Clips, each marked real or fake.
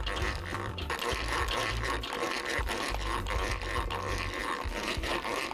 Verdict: fake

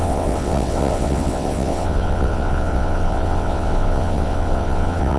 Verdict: fake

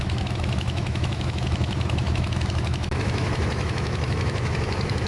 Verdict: fake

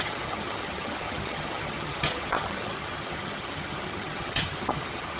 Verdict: fake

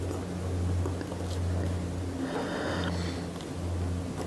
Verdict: real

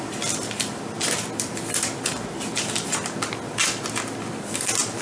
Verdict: real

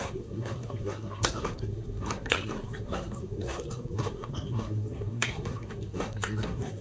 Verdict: fake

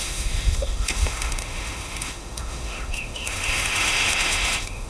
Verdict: fake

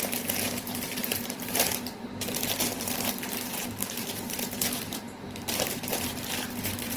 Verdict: fake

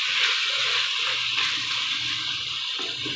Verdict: real